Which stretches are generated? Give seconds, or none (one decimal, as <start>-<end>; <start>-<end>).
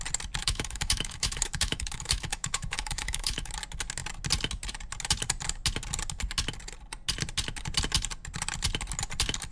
0.4-3.5